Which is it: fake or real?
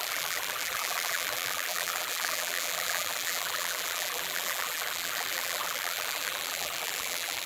fake